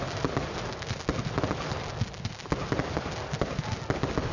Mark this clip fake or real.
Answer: real